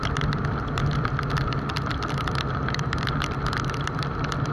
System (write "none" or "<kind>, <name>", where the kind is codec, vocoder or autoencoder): none